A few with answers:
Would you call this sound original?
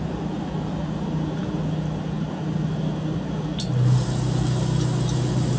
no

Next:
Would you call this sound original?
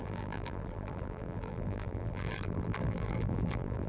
no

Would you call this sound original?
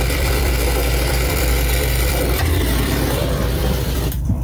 no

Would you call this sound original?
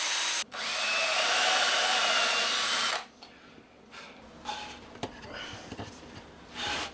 no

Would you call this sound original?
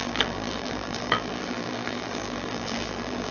no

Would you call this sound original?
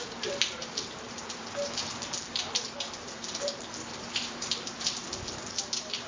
no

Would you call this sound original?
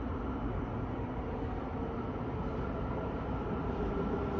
yes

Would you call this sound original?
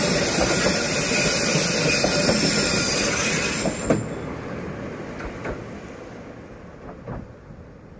yes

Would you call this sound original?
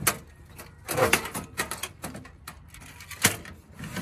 yes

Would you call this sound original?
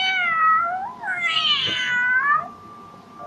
yes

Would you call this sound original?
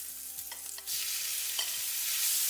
yes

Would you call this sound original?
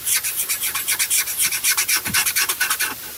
no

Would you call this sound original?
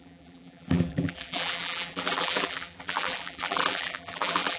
no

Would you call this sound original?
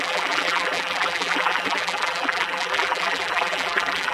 no